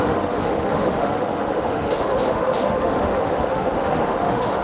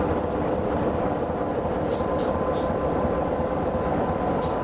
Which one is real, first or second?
second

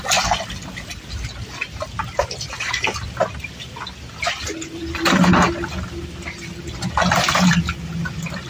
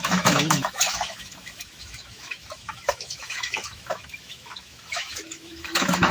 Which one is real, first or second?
first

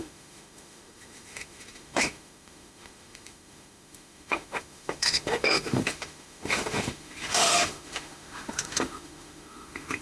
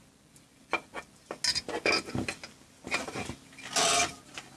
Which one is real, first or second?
second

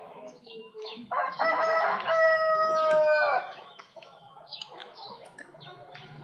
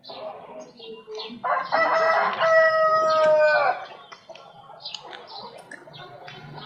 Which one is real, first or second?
second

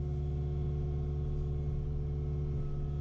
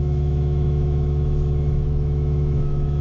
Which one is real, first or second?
first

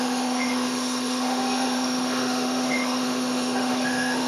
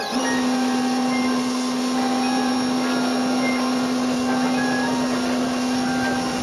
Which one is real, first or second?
second